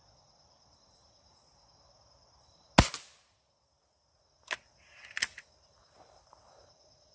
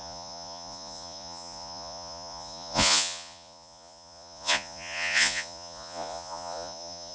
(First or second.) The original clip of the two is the first